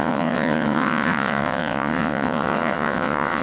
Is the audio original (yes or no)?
no